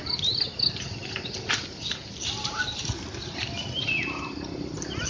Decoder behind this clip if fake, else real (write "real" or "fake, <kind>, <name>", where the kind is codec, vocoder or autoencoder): real